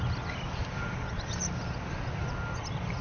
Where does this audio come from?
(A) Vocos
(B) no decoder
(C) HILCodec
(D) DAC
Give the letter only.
B